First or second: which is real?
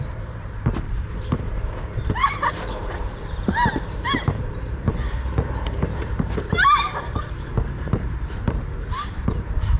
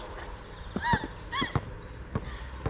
second